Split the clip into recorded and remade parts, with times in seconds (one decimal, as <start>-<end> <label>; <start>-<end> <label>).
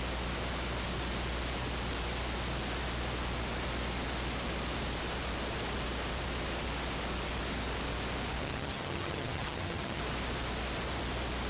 0.0-8.4 recorded; 8.4-10.0 remade; 10.0-11.5 recorded